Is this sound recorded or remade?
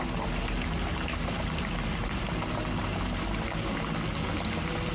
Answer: recorded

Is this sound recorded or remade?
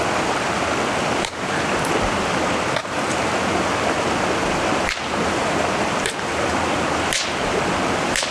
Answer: recorded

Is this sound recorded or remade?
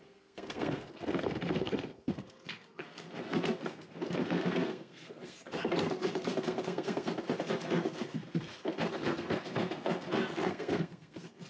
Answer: remade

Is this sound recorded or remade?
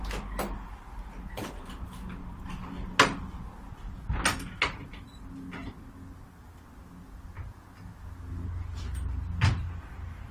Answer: recorded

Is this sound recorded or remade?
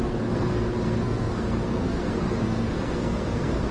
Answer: remade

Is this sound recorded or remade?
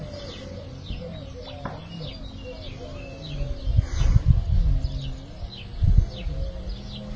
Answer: recorded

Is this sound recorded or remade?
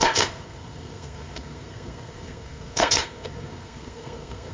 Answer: remade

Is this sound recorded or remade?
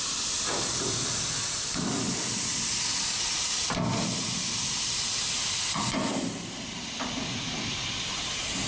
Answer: remade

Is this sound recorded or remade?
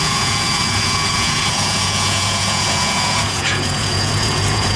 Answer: remade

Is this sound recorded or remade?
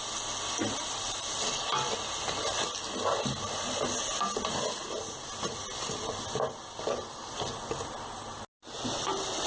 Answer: recorded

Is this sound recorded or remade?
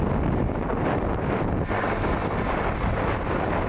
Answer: recorded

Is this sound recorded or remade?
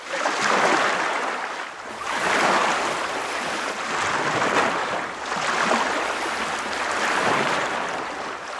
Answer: recorded